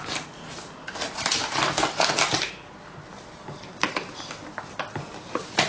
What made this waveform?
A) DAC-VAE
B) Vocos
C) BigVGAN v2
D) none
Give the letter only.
D